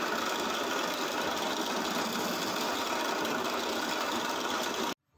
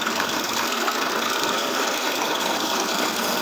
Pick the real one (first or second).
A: first